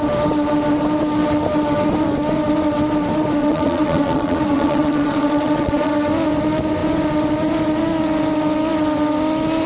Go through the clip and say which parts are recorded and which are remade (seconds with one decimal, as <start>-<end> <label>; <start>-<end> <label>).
0.0-3.4 recorded; 3.4-5.9 remade; 5.9-9.7 recorded